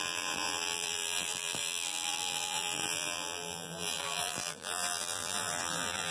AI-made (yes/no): yes